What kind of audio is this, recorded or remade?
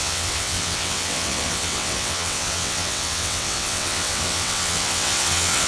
remade